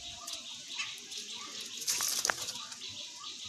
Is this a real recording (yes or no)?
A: yes